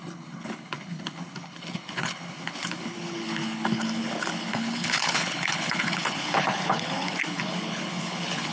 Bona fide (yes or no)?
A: no